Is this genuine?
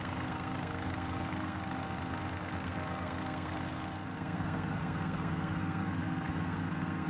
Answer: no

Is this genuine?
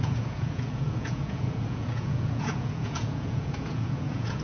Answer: no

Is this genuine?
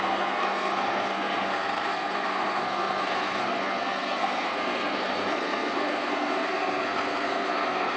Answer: no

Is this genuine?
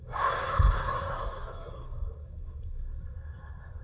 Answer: no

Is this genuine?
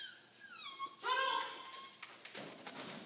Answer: yes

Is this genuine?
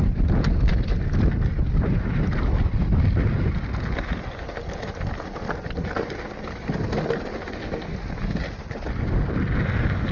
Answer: yes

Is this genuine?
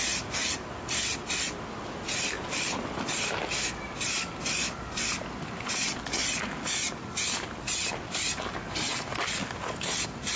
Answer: yes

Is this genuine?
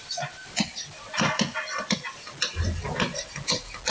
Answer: yes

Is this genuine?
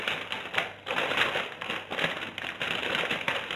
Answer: yes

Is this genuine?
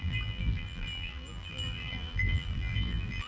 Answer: no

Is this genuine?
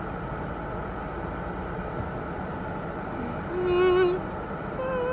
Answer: yes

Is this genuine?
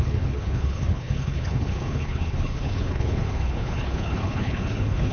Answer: no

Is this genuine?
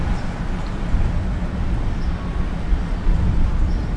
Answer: yes